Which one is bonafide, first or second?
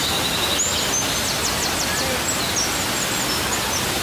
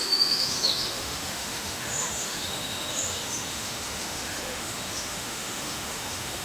first